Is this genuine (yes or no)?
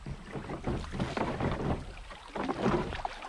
yes